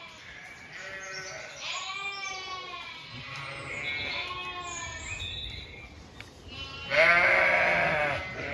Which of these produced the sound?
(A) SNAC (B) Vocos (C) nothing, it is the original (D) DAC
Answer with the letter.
C